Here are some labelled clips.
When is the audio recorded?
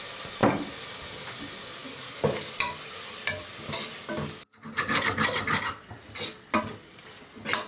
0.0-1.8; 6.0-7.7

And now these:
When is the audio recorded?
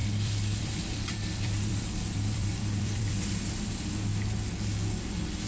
3.3-5.5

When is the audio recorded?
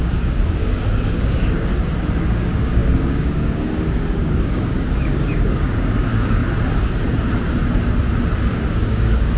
1.7-2.2; 6.4-8.5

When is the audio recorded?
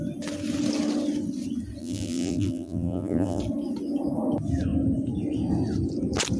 0.0-1.8; 3.4-6.4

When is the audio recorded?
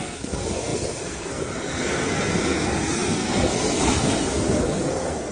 none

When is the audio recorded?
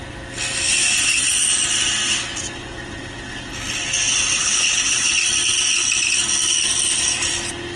0.0-4.4; 5.1-7.8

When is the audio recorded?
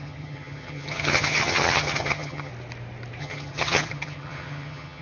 2.5-3.2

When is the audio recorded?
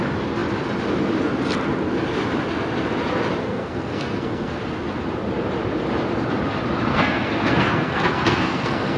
0.0-3.4; 4.6-6.9